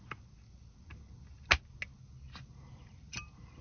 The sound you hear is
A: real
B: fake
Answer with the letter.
A